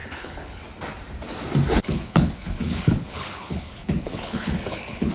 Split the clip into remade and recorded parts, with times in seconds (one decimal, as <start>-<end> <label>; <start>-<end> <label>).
0.0-0.6 remade; 0.6-1.8 recorded; 1.8-5.1 remade